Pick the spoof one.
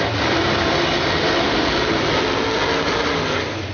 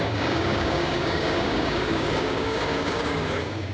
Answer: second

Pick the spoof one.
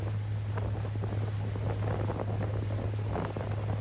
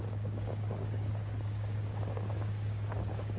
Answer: second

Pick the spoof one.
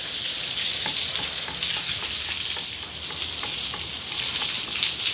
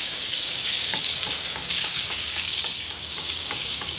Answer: second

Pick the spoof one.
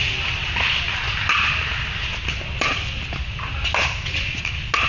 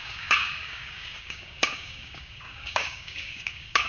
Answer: second